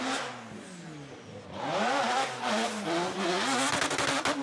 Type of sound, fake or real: real